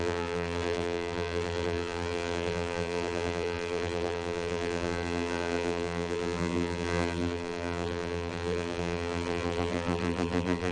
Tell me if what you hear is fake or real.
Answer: fake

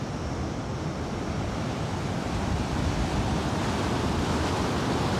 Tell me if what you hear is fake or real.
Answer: real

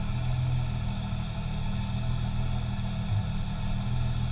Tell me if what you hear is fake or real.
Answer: real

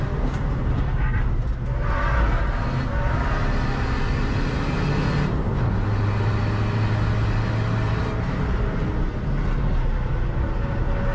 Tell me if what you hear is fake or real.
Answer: real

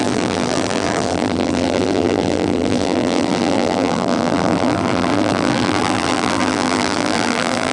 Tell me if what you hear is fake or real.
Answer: fake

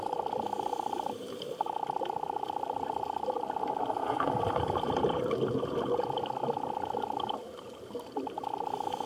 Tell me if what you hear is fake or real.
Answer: real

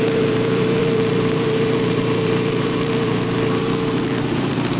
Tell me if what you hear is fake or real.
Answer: fake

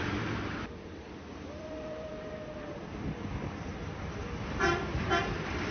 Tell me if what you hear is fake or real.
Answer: fake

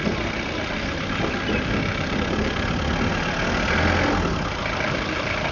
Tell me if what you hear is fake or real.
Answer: real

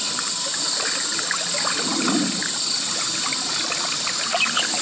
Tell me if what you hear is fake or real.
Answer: fake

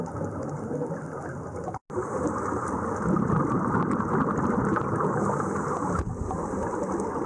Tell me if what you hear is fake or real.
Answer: real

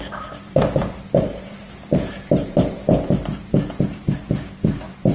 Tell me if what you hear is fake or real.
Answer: fake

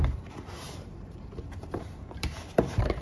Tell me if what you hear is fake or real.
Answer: fake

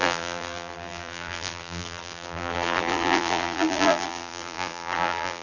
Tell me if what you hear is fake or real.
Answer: fake